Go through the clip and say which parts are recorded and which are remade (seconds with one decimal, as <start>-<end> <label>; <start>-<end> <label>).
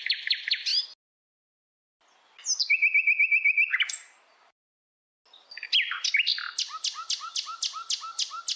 0.0-8.6 recorded